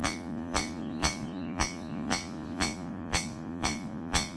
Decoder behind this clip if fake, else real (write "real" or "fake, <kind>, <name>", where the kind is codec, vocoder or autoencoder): fake, vocoder, Vocos